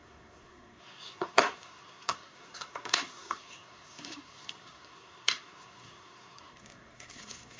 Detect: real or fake fake